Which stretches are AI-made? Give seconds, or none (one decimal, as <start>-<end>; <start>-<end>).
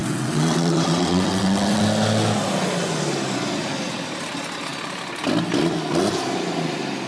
0.0-1.8